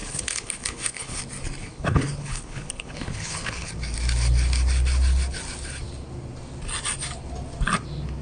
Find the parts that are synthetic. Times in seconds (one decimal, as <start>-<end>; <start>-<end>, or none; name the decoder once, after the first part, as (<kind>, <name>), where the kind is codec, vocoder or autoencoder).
0.0-1.2 (codec, HILCodec); 1.6-3.7